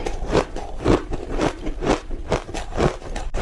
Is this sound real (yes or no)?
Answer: no